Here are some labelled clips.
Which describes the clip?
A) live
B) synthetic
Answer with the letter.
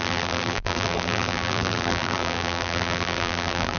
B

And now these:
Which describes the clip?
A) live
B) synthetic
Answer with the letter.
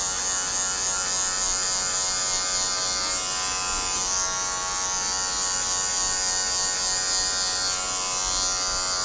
A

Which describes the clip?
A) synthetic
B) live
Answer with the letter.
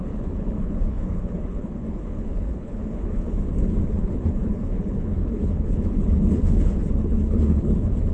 A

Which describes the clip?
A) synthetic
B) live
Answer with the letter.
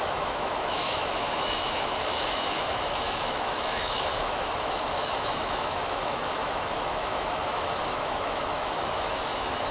A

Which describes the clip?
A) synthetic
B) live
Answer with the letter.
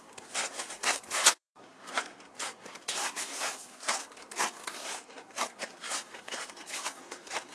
A